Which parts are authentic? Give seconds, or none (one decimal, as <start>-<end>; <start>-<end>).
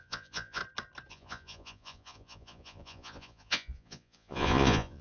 0.6-1.1